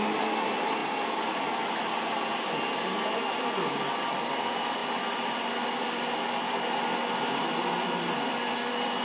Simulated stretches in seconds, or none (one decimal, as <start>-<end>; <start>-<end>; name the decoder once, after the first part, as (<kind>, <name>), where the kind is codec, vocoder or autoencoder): none

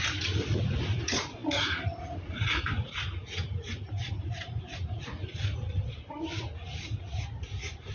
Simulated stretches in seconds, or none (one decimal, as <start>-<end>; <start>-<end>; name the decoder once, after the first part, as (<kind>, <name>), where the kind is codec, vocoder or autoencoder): 0.0-7.9 (vocoder, Vocos)

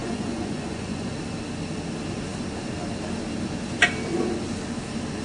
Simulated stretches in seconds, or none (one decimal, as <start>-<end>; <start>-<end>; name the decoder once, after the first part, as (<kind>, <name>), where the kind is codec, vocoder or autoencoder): 0.0-1.1 (vocoder, Vocos)

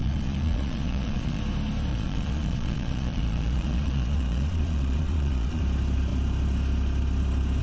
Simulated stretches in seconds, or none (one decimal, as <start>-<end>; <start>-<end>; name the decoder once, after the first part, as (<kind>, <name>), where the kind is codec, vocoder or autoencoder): 0.0-1.4 (vocoder, Vocos); 1.9-5.6

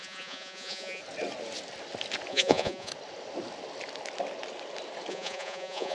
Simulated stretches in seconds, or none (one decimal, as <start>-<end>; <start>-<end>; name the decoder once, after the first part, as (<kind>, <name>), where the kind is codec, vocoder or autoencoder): 0.0-1.0 (vocoder, Vocos); 2.3-2.9; 5.1-5.9

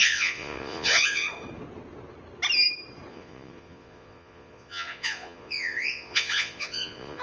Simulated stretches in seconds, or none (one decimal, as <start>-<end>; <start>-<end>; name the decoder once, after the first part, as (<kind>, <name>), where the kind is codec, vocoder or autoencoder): 0.0-1.3 (vocoder, Vocos); 3.1-7.2

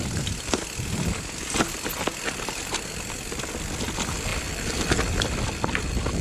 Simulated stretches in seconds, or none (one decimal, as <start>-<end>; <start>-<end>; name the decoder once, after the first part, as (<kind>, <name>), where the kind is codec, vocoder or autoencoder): none